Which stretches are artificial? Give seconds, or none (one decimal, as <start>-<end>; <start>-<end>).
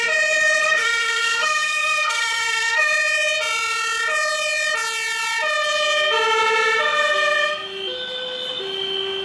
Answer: 0.6-2.9